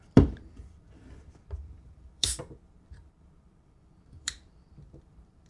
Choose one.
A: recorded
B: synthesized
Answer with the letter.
B